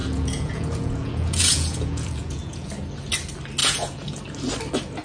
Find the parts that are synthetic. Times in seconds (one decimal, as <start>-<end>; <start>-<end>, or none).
0.0-2.7; 3.6-4.2

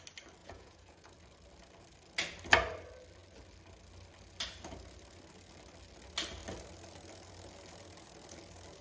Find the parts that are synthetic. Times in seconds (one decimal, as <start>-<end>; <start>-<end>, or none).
0.4-1.1

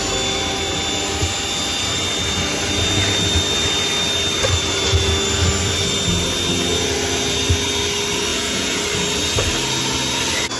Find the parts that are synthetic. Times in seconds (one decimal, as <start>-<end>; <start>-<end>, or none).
8.3-8.8

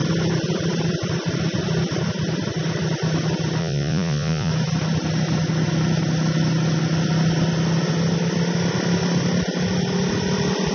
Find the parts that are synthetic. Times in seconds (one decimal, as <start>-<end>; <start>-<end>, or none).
3.6-4.5

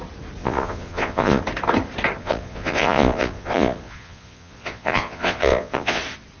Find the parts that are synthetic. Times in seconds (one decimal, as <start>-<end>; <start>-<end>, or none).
0.4-1.4; 2.2-6.0

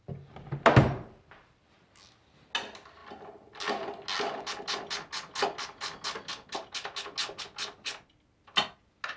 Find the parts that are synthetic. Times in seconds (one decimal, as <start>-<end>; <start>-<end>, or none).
none

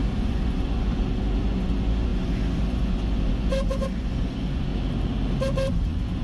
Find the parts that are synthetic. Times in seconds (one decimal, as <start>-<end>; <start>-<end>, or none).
0.0-4.7; 5.7-6.2

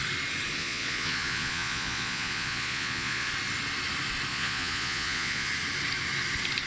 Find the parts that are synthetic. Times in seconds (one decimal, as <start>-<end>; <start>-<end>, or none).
0.6-3.3; 4.3-5.5